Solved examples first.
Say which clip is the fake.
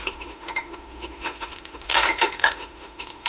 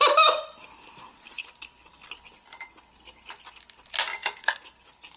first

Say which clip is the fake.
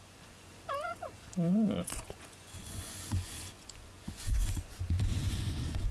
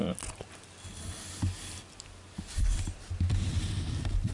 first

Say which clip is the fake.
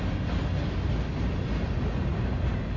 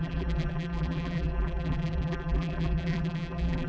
second